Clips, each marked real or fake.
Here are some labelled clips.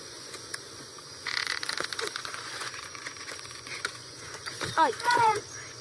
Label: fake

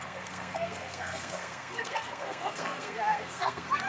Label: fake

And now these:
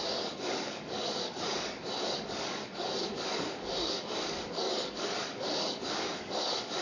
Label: fake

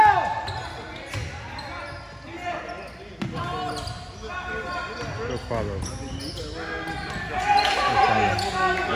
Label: real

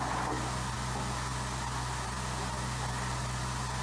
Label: real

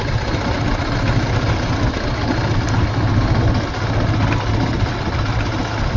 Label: real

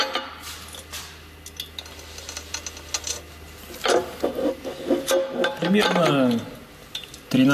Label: real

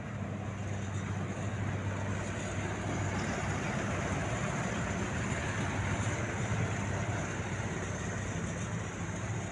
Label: real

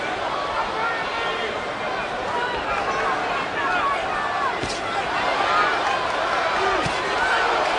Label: real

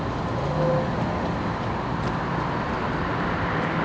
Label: real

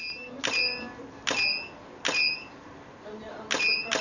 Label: real